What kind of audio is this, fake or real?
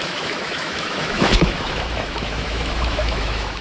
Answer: fake